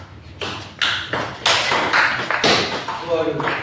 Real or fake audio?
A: real